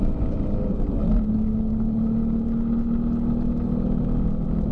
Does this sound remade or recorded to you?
recorded